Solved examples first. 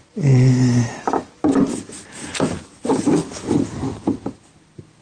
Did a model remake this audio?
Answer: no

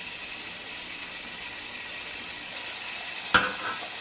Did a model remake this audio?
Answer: no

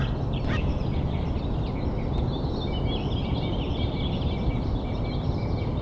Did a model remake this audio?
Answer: no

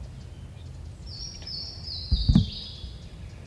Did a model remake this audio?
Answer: no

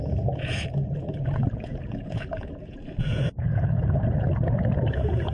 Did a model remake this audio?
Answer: yes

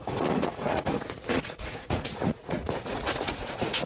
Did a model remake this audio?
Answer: yes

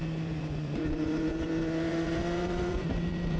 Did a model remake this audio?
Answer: yes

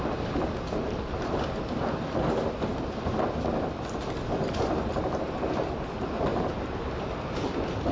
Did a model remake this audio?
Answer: no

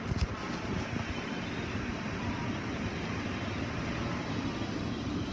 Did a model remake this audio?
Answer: no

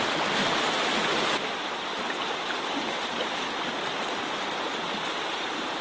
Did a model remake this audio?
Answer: no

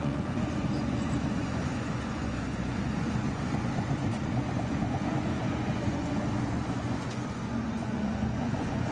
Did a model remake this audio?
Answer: yes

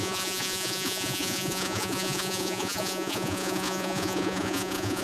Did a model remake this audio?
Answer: yes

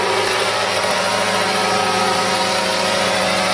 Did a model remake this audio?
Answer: no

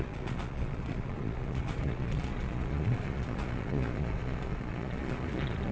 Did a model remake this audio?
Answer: yes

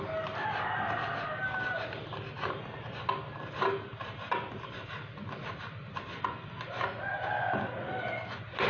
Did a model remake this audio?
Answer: no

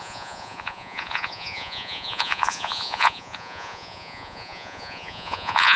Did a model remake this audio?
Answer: yes